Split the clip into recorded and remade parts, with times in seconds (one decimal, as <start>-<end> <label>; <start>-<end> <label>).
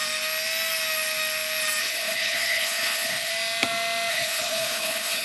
0.0-1.8 recorded; 1.8-3.3 remade; 3.3-4.1 recorded; 4.1-5.2 remade